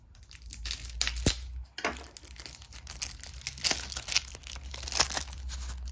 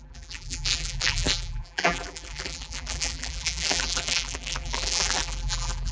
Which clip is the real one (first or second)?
first